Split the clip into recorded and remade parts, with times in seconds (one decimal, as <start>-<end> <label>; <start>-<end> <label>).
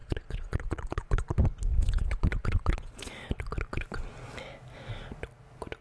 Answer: 0.0-1.2 remade; 1.2-1.7 recorded; 1.7-3.1 remade; 3.1-5.8 recorded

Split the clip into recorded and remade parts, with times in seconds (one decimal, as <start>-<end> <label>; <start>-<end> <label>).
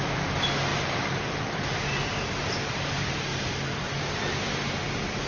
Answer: 0.0-0.7 recorded; 0.7-1.6 remade; 1.6-3.3 recorded; 3.3-4.0 remade; 4.0-5.3 recorded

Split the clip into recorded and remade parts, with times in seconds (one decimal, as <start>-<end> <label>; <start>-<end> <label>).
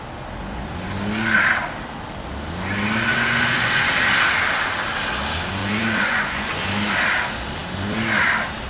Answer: 0.0-3.1 recorded; 3.1-3.9 remade; 3.9-5.6 recorded; 5.6-6.6 remade; 6.6-8.7 recorded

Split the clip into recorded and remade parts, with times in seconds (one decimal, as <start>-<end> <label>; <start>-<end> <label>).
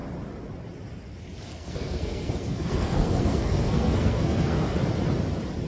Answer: 0.0-1.5 recorded; 1.5-4.9 remade; 4.9-5.7 recorded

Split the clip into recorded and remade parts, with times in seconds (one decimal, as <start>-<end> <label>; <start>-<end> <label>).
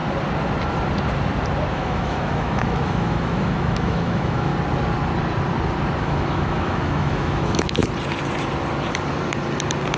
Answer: 0.0-1.7 recorded; 1.7-4.5 remade; 4.5-6.0 recorded; 6.0-7.8 remade; 7.8-10.0 recorded